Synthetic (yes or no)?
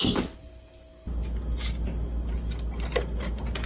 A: no